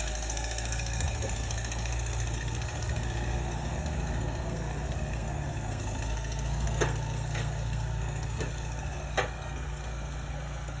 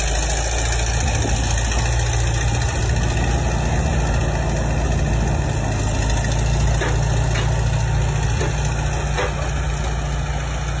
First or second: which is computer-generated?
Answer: first